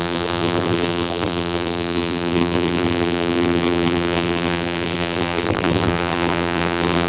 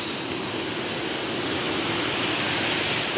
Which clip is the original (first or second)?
second